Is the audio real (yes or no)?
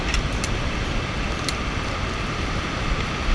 yes